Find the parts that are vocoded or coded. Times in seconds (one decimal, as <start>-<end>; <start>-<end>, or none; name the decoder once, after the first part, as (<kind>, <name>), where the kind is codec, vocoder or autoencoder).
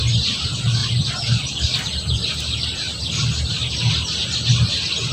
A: 0.8-3.9 (vocoder, BigVGAN v2)